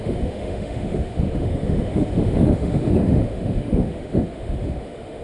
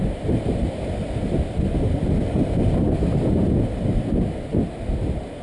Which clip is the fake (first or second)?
first